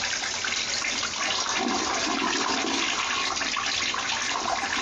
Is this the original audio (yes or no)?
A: yes